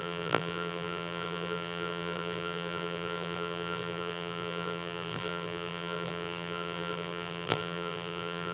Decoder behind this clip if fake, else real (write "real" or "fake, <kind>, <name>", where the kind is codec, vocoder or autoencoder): fake, vocoder, BigVGAN v2